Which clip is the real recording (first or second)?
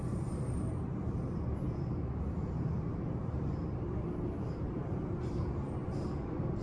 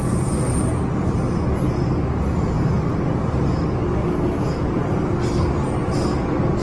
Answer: second